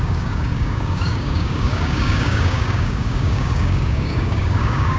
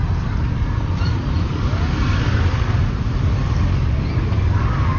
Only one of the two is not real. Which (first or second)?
first